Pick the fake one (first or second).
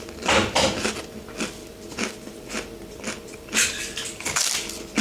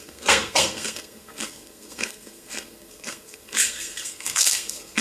second